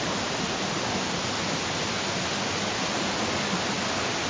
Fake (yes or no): no